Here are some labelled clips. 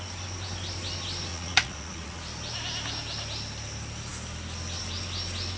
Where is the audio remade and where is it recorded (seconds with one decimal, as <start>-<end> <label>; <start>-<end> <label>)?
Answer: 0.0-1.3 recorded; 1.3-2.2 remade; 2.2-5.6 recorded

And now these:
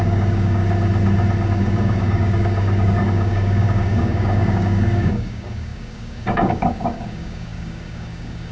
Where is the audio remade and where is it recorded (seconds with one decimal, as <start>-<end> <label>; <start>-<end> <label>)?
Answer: 0.0-0.6 remade; 0.6-1.5 recorded; 1.5-8.5 remade

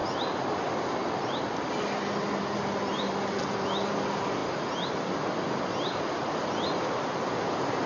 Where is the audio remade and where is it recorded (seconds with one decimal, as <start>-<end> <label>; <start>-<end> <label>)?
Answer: 0.0-7.9 recorded